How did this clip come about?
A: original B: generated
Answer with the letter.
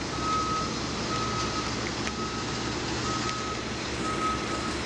A